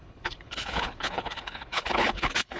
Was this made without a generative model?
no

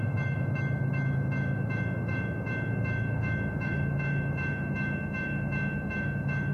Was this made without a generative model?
no